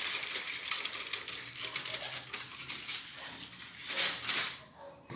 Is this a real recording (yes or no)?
yes